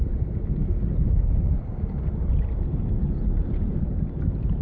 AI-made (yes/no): no